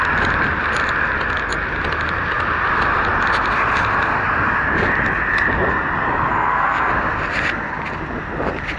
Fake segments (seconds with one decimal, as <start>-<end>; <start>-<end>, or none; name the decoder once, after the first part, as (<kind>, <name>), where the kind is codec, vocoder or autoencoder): 6.3-6.9 (codec, SNAC)